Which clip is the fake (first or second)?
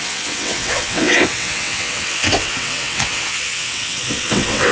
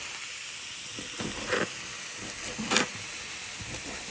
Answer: first